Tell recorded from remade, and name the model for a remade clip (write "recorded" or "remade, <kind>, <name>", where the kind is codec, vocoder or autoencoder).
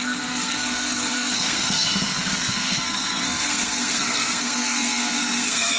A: remade, codec, SNAC